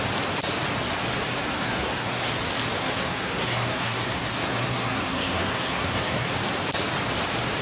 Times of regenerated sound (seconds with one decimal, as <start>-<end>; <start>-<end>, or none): 1.4-2.3; 2.8-6.3